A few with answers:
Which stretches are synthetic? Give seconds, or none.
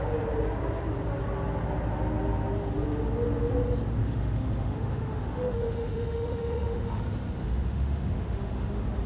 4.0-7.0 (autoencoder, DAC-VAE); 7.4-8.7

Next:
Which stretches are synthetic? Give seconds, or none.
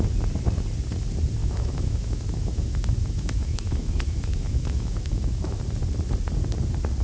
1.4-5.6 (autoencoder, DAC-VAE)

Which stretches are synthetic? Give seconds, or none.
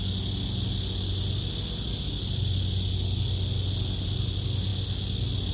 none